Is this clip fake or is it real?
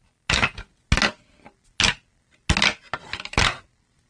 real